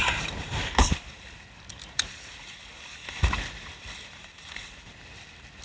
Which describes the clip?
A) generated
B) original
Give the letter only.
A